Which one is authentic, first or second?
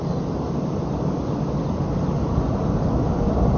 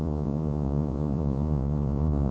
first